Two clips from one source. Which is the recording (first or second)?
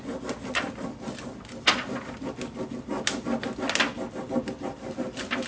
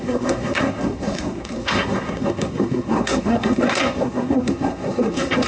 first